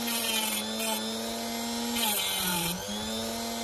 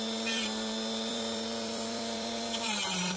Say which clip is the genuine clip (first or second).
first